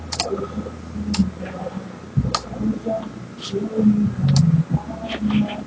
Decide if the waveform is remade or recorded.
recorded